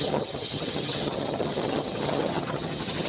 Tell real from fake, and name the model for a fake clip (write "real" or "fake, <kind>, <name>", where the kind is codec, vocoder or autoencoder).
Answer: fake, vocoder, HiFi-GAN